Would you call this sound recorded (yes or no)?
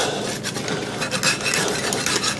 yes